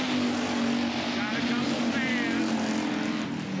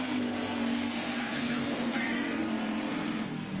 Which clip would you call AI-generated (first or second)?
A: second